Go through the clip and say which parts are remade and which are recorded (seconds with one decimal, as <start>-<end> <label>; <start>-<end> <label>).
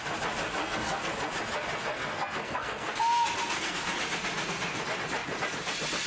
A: 0.0-0.6 recorded; 0.6-1.1 remade; 1.1-1.8 recorded; 1.8-3.9 remade; 3.9-6.1 recorded